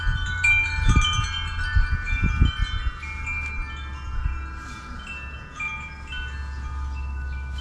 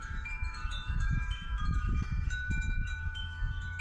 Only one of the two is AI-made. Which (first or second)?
second